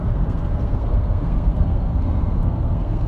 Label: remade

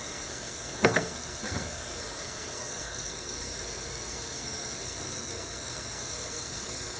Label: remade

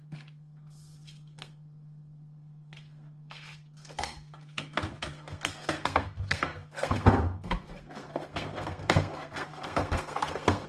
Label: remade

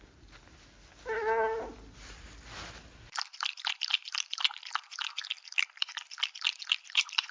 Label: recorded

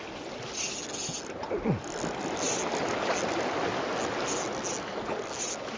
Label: recorded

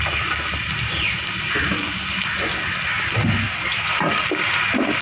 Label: recorded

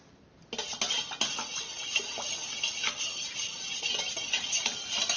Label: recorded